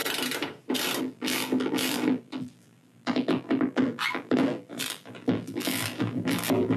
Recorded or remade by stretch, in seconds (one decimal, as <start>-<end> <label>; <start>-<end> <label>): 0.0-1.0 recorded; 1.0-6.8 remade